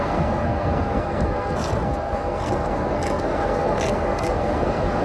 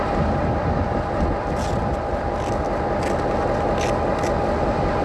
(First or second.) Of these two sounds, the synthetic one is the first